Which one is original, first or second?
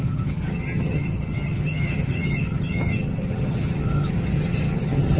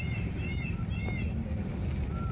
second